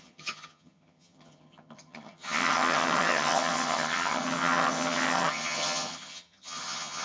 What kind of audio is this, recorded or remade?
remade